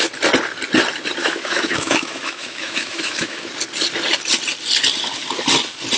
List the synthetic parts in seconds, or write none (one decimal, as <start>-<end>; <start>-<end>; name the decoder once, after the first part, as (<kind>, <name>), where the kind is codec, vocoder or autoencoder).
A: 1.2-3.5 (autoencoder, DAC-VAE)